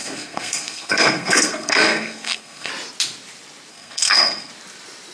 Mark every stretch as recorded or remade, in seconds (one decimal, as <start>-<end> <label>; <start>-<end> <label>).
0.0-2.7 remade; 2.7-3.7 recorded; 3.7-4.5 remade; 4.5-5.1 recorded